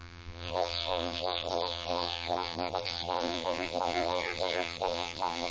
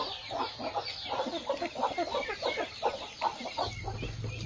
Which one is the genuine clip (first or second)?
second